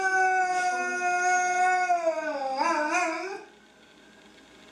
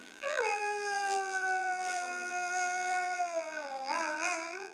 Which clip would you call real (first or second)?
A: first